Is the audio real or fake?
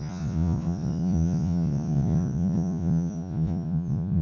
fake